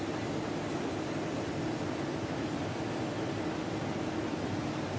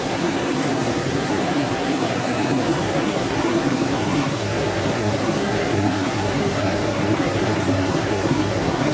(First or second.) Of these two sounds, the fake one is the second